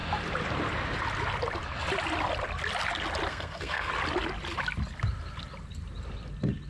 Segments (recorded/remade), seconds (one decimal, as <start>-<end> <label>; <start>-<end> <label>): 0.0-3.3 recorded; 3.3-3.9 remade; 3.9-6.7 recorded